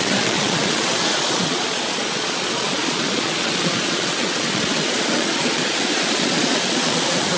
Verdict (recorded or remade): remade